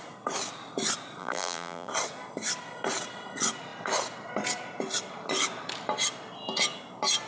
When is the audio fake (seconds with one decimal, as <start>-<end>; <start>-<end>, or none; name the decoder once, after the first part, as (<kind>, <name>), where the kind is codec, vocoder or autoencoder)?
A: 1.2-1.9 (vocoder, BigVGAN v2)